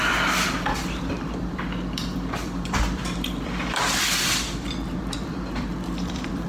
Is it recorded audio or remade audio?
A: remade